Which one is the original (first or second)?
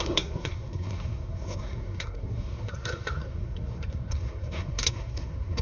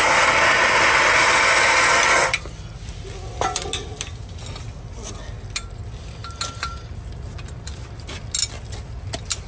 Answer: second